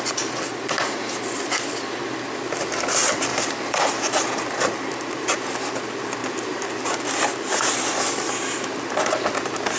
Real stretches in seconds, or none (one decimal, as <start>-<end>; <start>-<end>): 0.0-3.3; 5.4-6.2; 6.9-9.8